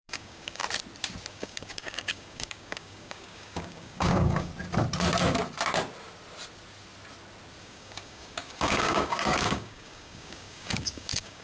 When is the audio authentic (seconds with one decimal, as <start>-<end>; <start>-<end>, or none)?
0.6-1.3; 4.5-7.6